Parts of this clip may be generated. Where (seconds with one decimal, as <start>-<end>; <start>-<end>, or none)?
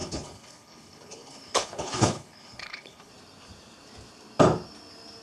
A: 0.0-3.1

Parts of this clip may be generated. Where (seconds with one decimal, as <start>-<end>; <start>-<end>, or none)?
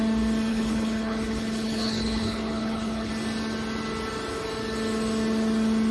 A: 0.5-3.1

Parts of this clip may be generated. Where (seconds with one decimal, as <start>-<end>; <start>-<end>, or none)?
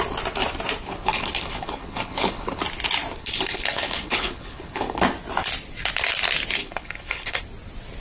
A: 0.9-2.6; 3.2-5.0; 6.6-7.4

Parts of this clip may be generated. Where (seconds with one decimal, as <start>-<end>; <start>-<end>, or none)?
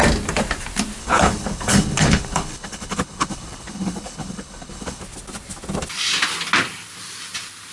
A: 1.0-5.0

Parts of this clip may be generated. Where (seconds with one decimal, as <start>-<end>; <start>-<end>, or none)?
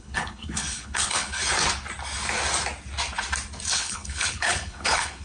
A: 0.0-1.4; 3.7-5.2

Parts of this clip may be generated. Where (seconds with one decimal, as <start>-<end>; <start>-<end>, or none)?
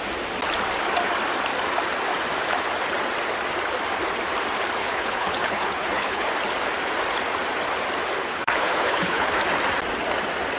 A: 4.8-6.3; 8.2-9.4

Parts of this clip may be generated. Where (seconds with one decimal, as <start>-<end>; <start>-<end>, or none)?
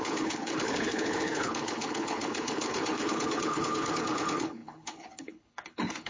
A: 0.0-6.1